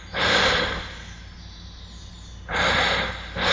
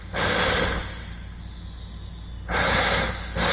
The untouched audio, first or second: second